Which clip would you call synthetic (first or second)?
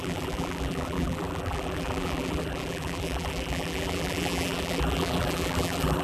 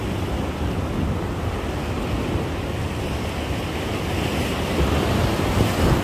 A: first